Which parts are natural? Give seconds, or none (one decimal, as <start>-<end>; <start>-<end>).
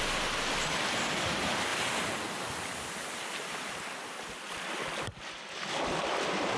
0.0-6.6